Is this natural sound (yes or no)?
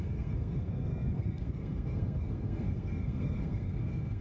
no